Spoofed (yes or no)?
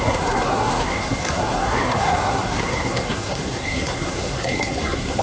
yes